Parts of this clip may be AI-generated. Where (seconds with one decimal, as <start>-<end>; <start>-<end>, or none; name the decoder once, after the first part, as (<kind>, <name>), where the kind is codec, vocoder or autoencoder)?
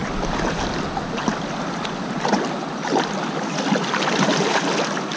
none